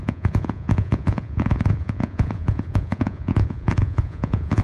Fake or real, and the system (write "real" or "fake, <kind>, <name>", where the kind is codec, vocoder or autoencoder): fake, vocoder, Vocos